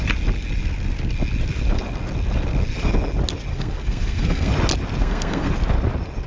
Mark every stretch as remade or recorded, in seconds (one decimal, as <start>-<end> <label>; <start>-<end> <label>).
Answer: 0.0-3.5 recorded; 3.5-4.5 remade; 4.5-5.0 recorded; 5.0-5.5 remade; 5.5-6.3 recorded